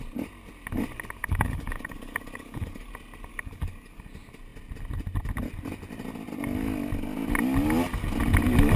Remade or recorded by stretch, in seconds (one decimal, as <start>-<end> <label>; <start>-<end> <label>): 0.0-1.2 recorded; 1.2-2.9 remade; 2.9-3.3 recorded; 3.3-4.0 remade; 4.0-8.8 recorded